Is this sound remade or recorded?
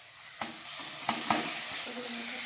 remade